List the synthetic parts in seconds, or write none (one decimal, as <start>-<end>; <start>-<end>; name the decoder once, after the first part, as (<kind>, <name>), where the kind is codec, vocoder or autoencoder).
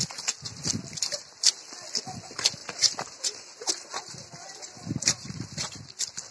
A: 2.6-3.7 (vocoder, BigVGAN v2)